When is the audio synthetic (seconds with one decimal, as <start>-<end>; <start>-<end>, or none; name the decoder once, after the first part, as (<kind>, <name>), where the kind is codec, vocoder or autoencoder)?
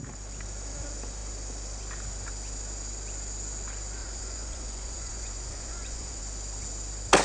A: 4.0-6.2 (vocoder, Vocos)